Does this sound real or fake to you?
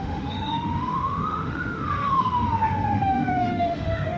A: fake